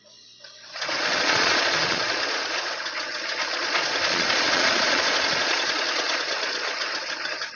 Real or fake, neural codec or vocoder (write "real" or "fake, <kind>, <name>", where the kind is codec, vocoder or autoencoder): fake, vocoder, Vocos